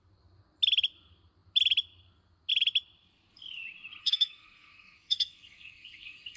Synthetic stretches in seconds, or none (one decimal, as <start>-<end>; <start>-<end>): 4.0-6.4

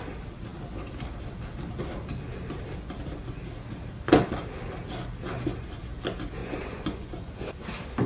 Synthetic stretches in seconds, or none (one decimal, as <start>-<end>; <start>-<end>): 6.4-7.5

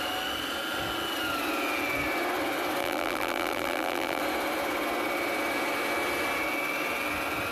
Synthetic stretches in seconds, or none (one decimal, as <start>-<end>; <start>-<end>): 2.8-4.2

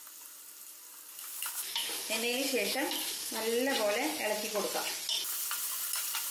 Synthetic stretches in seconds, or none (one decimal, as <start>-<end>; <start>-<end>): 1.2-3.3

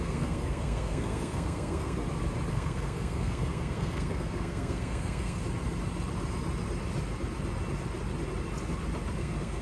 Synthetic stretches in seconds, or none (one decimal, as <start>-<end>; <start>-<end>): 0.0-2.0; 2.5-5.4; 9.2-9.6

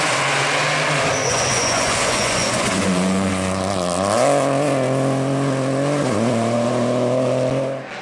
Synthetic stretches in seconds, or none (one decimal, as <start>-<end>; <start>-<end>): 1.2-3.3